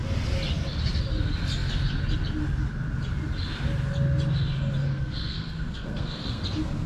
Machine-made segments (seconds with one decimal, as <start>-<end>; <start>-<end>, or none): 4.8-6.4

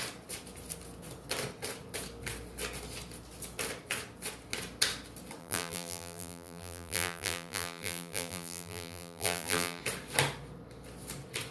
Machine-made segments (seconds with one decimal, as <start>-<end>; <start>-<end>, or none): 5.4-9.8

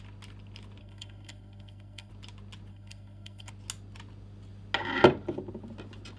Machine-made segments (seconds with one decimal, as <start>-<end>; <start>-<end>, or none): 0.8-2.1; 2.7-3.5

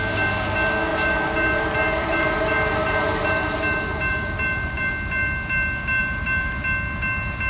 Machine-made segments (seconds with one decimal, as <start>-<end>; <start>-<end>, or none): 0.9-4.9; 6.0-6.5